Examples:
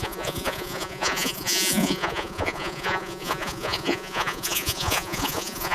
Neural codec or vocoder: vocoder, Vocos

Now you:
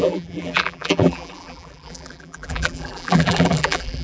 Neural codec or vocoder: vocoder, BigVGAN v2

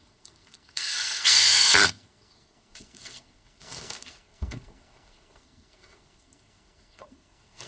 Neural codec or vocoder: codec, SNAC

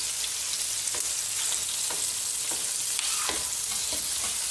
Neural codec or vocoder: none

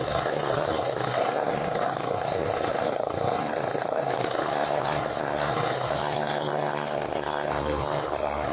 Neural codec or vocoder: codec, SNAC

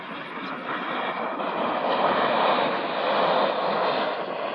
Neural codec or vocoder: none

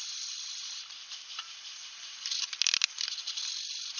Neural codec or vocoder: none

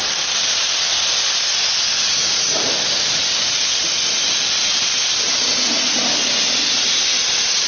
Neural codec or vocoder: none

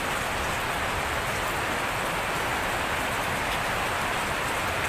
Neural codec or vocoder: none